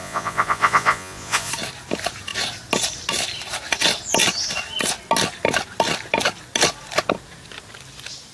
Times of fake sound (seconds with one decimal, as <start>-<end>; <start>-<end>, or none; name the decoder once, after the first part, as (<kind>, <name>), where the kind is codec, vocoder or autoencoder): 0.0-1.5 (vocoder, Vocos)